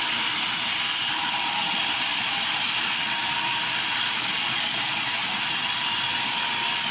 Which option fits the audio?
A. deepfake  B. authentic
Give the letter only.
B